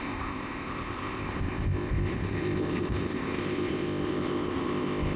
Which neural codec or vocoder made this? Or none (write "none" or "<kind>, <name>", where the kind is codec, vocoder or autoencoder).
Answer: codec, ZipCodec